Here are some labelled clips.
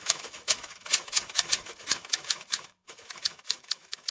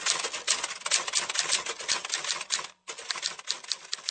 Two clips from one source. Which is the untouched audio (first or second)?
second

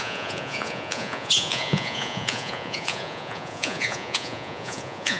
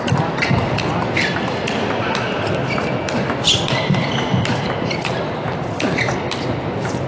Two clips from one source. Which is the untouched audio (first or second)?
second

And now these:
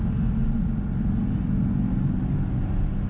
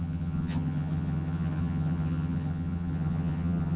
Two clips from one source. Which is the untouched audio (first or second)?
first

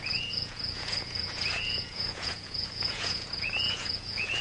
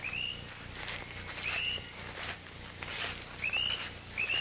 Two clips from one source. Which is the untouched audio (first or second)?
second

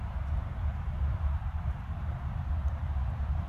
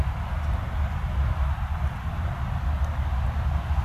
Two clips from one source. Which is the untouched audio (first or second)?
second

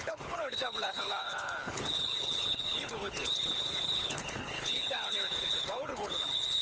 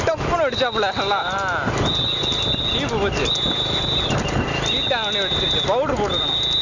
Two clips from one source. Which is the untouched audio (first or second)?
second